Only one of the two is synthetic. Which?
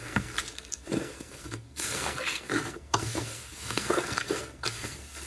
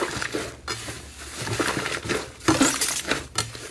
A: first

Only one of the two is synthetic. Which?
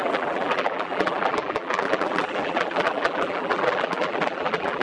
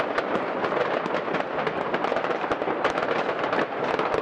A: first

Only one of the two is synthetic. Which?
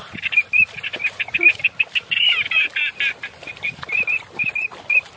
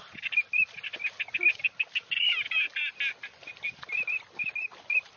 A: first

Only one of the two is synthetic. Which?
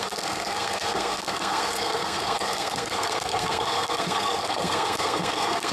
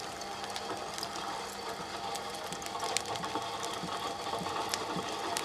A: first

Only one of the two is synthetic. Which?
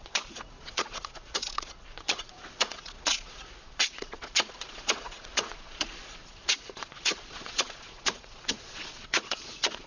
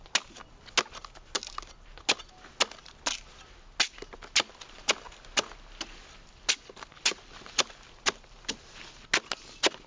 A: first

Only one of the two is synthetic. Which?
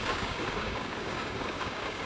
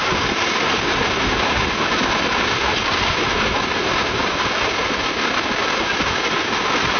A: first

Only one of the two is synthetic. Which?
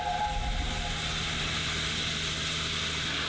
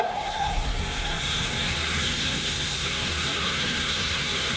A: second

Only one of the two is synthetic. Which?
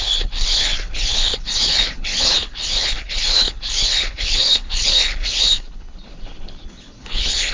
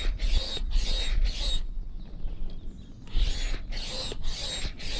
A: first